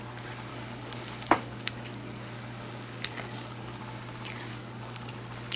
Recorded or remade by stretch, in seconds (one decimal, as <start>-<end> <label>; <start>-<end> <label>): 0.0-0.5 recorded; 0.5-3.8 remade; 3.8-4.5 recorded; 4.5-5.1 remade; 5.1-5.6 recorded